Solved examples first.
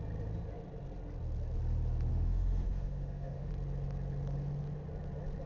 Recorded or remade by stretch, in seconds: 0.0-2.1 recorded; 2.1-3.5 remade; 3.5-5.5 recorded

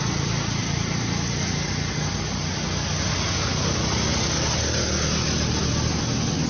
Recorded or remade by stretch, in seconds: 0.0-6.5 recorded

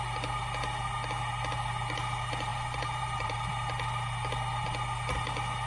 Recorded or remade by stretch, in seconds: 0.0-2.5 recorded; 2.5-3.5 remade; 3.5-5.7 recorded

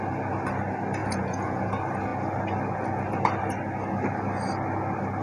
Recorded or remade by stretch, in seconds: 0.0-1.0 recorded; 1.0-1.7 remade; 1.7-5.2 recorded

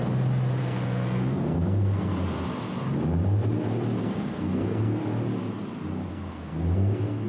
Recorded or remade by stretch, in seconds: 0.0-0.6 recorded; 0.6-2.1 remade; 2.1-4.0 recorded; 4.0-5.0 remade; 5.0-6.1 recorded; 6.1-7.3 remade